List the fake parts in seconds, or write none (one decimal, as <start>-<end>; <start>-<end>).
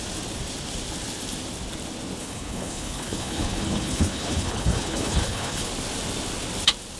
2.2-5.7